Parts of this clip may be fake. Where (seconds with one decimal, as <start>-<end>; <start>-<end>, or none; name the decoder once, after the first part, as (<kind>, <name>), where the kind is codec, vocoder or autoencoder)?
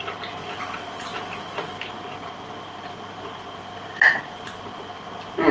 none